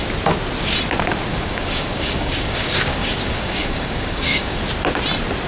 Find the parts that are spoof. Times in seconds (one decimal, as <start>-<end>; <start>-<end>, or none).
1.3-4.6